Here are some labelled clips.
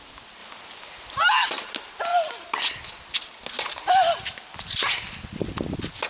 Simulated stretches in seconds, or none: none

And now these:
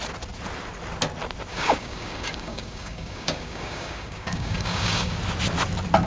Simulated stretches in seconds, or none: 1.5-5.2 (codec, DAC)

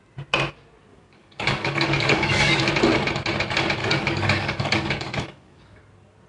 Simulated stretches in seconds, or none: 0.9-2.7 (codec, DAC); 3.8-5.8

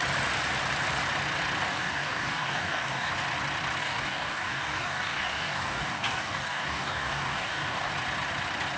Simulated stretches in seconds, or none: 1.7-3.1 (codec, DAC); 3.8-7.9

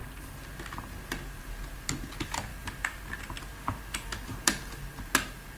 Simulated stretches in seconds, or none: none

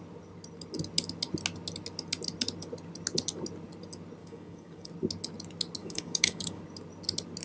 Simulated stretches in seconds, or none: 4.2-4.9 (codec, DAC); 5.8-6.6

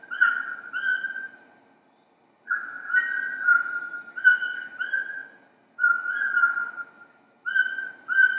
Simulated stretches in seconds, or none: none

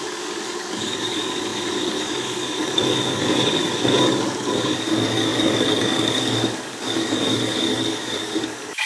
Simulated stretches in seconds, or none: 0.0-8.9 (codec, DAC)